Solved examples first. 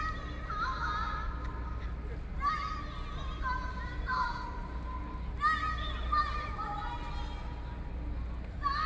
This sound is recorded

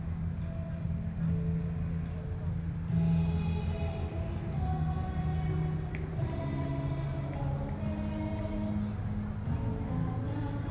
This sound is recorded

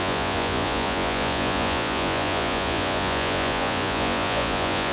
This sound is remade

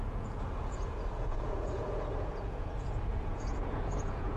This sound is remade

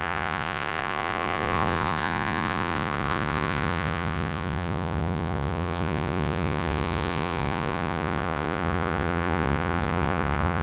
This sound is remade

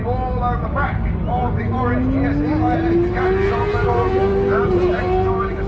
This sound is recorded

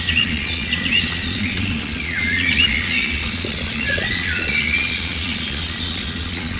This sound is remade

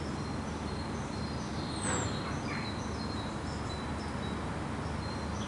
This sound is recorded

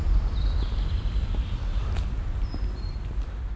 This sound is recorded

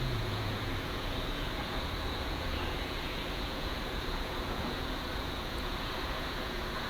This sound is remade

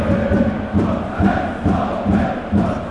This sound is recorded